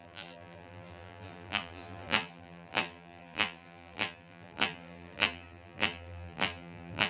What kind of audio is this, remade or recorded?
remade